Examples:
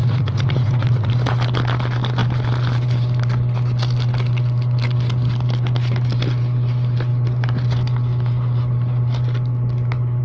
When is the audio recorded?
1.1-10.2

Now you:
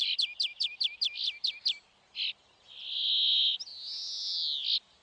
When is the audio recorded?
0.0-5.0

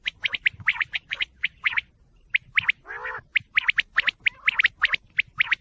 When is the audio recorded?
0.0-0.7; 1.9-5.6

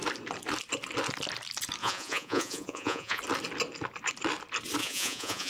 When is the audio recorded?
0.0-1.8; 3.2-4.8

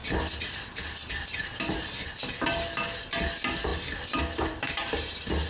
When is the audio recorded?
0.0-5.5

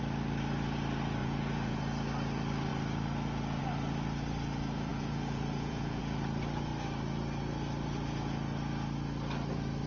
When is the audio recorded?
0.0-1.2; 1.8-4.9; 6.0-9.9

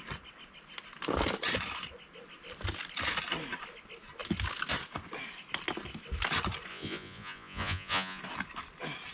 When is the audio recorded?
0.0-6.7; 8.2-9.1

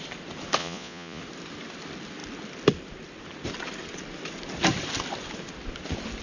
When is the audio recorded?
0.0-0.6; 1.2-6.2